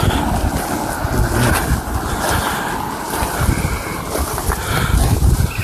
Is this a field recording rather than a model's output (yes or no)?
yes